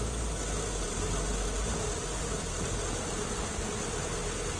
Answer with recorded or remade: recorded